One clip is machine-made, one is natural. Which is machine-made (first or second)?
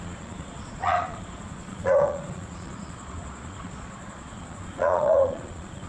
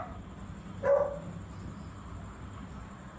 first